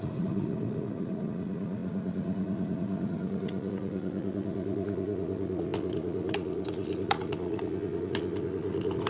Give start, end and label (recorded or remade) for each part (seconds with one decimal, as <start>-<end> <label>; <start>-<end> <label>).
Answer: 0.0-9.1 remade